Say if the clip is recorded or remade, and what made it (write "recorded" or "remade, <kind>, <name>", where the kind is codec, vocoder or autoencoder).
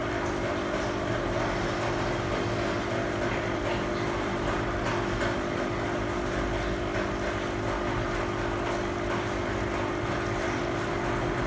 recorded